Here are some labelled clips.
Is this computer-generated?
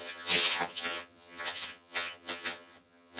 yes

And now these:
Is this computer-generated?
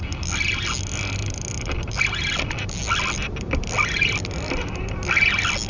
no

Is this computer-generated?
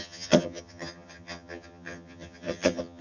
yes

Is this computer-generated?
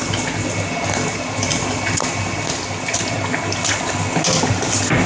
no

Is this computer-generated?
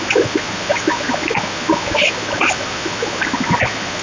no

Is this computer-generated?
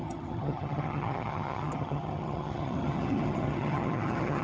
yes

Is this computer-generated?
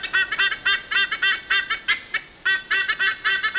no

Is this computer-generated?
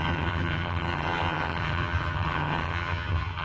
yes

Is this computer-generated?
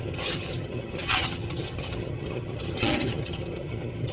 yes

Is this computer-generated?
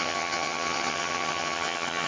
yes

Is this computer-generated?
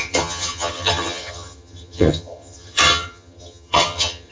yes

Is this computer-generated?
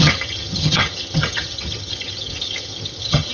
yes